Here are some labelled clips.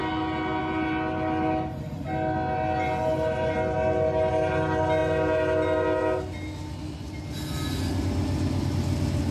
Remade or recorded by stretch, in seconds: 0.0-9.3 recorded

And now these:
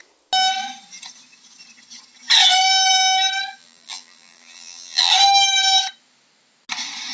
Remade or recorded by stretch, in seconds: 0.0-3.6 recorded; 3.6-5.1 remade; 5.1-7.1 recorded

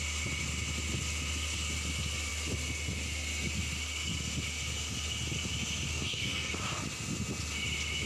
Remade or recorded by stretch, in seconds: 0.0-5.9 recorded; 5.9-6.5 remade; 6.5-8.1 recorded

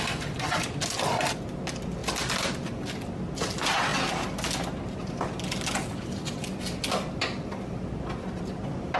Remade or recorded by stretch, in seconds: 0.0-9.0 recorded

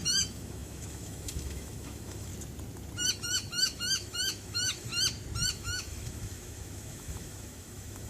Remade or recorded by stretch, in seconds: 0.0-2.3 remade; 2.3-3.1 recorded; 3.1-4.9 remade; 4.9-5.5 recorded; 5.5-8.1 remade

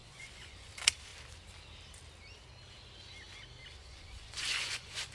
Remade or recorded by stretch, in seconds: 0.0-0.7 remade; 0.7-3.8 recorded; 3.8-5.1 remade